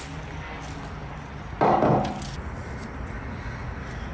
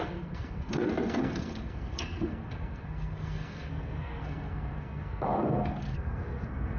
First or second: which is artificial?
second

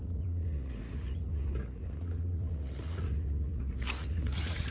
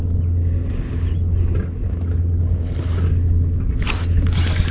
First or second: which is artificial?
first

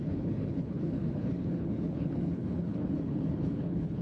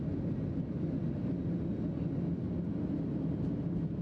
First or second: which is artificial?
first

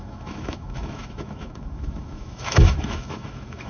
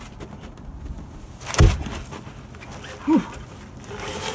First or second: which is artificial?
first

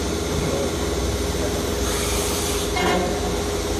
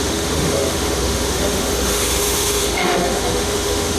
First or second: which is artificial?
second